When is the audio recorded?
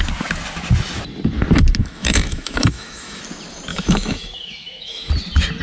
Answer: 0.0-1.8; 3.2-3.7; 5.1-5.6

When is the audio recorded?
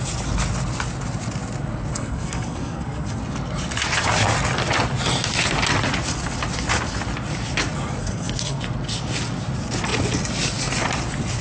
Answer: 0.0-1.9; 3.2-8.0; 8.6-11.4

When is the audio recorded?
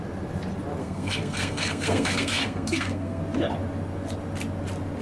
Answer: 0.0-0.8; 3.2-5.0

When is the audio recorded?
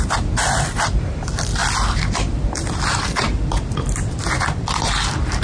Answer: 0.0-5.4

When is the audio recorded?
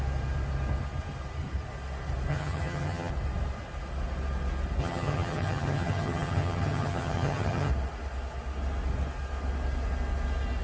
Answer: 0.0-2.3; 3.1-4.8; 7.7-10.6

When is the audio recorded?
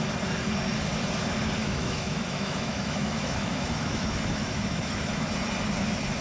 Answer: 0.0-1.6; 5.3-6.2